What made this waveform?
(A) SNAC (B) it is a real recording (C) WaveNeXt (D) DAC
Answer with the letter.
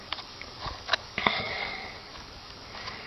D